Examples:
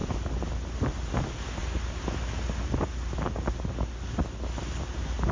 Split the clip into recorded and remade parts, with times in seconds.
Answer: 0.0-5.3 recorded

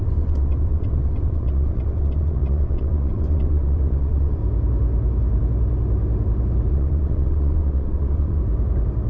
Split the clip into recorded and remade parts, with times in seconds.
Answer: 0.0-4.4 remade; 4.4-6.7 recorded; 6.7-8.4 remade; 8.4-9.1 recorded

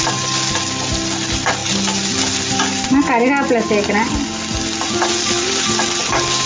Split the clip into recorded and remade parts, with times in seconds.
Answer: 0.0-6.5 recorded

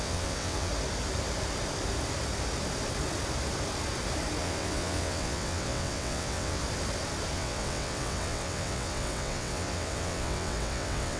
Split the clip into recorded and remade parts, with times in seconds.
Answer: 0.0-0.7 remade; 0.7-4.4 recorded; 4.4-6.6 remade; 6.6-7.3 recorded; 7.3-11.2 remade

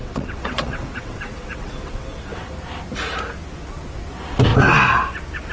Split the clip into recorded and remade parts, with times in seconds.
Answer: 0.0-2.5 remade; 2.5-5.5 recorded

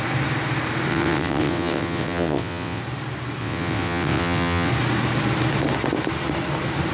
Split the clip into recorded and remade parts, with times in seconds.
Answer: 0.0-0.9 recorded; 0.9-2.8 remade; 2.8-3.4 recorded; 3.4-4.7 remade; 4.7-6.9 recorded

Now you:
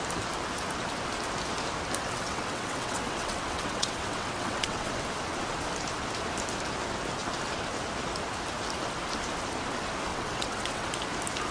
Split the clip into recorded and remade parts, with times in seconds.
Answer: 0.0-2.0 recorded; 2.0-4.9 remade; 4.9-10.1 recorded; 10.1-10.9 remade; 10.9-11.5 recorded